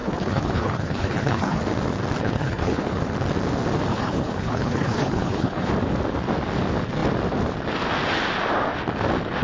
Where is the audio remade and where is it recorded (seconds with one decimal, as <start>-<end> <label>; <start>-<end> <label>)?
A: 0.0-1.6 remade; 1.6-2.2 recorded; 2.2-3.0 remade; 3.0-3.9 recorded; 3.9-5.7 remade; 5.7-9.4 recorded